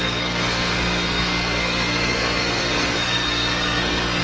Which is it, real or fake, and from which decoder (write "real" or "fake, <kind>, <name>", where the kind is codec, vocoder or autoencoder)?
fake, codec, SNAC